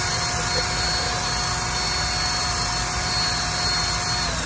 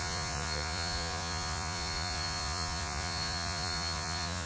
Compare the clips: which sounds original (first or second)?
first